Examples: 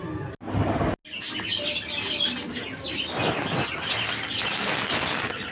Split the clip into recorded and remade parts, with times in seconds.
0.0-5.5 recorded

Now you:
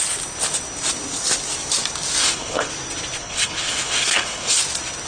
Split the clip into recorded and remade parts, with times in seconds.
0.0-2.2 recorded; 2.2-2.7 remade; 2.7-3.2 recorded; 3.2-4.6 remade; 4.6-5.1 recorded

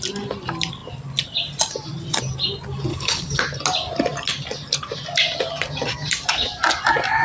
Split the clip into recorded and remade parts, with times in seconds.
0.0-2.9 recorded; 2.9-3.4 remade; 3.4-7.2 recorded

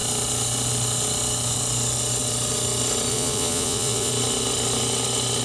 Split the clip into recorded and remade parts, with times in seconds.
0.0-3.1 recorded; 3.1-4.1 remade; 4.1-5.4 recorded

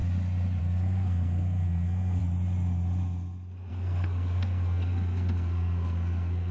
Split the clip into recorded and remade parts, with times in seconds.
0.0-0.6 recorded; 0.6-2.2 remade; 2.2-3.7 recorded; 3.7-6.5 remade

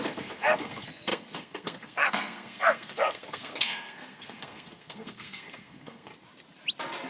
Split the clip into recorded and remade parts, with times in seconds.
0.0-6.1 remade; 6.1-7.1 recorded

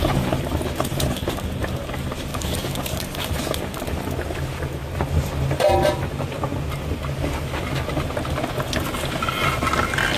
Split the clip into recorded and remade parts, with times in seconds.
0.0-2.3 recorded; 2.3-3.3 remade; 3.3-10.2 recorded